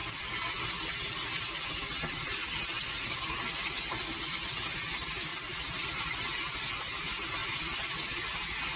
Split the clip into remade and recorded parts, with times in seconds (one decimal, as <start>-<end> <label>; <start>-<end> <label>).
0.0-3.1 recorded; 3.1-4.5 remade; 4.5-5.3 recorded; 5.3-6.0 remade; 6.0-7.4 recorded; 7.4-8.0 remade; 8.0-8.8 recorded